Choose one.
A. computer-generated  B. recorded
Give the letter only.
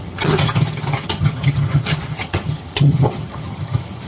A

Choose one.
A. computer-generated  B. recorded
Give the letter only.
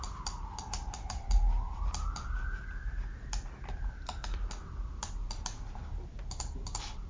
B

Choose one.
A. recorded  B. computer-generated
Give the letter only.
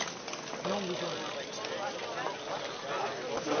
A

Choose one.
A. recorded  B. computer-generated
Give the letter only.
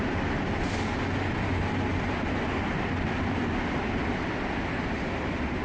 A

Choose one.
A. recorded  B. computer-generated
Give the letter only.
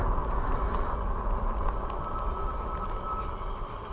A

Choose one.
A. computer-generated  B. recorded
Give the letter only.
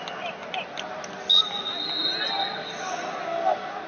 B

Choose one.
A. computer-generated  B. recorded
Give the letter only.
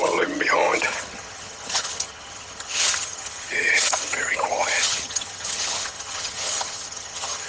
A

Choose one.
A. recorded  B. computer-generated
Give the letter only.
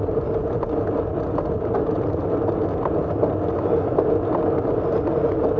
A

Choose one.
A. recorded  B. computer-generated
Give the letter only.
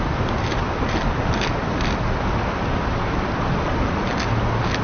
A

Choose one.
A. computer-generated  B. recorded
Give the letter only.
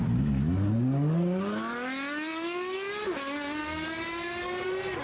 B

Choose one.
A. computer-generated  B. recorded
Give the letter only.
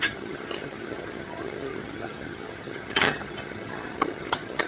A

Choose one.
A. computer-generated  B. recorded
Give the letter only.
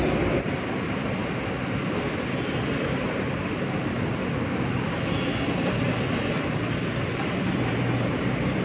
B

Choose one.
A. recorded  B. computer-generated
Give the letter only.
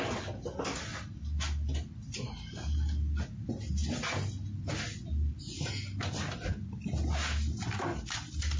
A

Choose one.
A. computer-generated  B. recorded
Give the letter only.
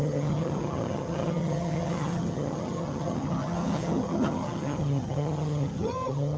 A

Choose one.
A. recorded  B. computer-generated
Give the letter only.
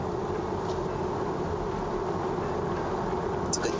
A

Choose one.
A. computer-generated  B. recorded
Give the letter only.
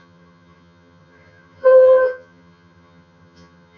A